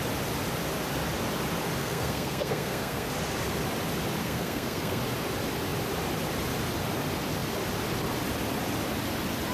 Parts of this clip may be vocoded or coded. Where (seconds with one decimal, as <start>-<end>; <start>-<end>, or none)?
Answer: 1.8-3.1; 4.2-5.0